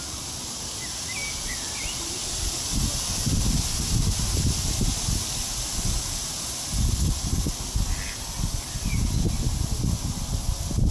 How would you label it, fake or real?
real